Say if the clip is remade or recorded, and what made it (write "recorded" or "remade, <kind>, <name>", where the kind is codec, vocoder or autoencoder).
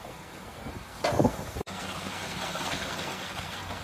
remade, codec, SNAC